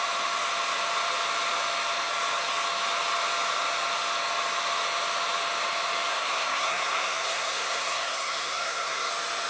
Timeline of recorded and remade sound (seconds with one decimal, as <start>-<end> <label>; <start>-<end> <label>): 0.0-6.1 recorded; 6.1-9.1 remade; 9.1-9.5 recorded